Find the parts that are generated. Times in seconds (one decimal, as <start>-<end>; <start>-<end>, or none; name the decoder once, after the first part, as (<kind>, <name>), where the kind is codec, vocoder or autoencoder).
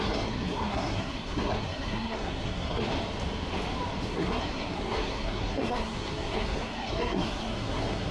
0.0-2.9 (codec, SNAC); 4.1-8.1